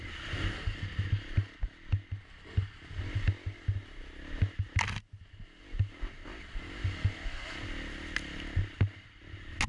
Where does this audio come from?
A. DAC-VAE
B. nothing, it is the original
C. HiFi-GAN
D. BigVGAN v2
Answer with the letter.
B